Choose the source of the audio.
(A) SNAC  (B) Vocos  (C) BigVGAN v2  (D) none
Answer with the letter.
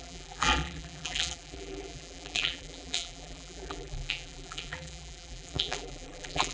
C